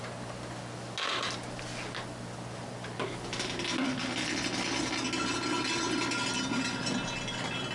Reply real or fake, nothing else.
real